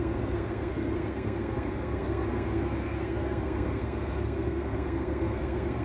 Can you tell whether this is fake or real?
fake